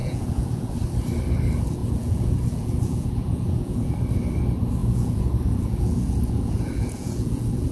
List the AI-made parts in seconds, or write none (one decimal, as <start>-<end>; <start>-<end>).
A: 0.0-0.7; 1.8-3.9; 4.8-7.7

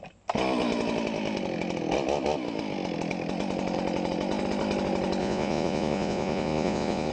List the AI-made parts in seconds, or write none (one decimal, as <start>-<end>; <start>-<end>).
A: 5.2-7.1

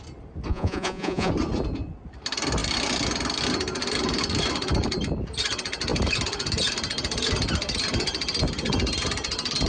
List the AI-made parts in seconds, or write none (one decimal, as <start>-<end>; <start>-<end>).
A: 0.5-1.3

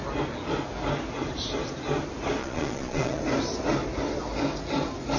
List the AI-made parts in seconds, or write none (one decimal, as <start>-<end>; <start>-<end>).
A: 2.4-3.2

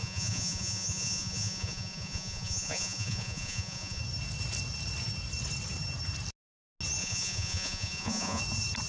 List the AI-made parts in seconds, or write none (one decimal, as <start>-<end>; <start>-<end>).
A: 0.0-4.0; 7.0-8.4

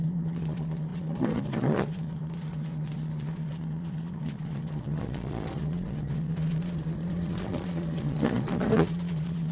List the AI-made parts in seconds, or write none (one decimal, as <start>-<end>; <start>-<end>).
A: 0.0-9.5

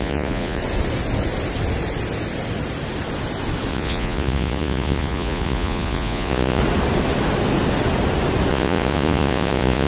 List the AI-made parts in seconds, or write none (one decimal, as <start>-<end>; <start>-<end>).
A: 0.0-0.6; 3.7-6.6; 8.5-9.9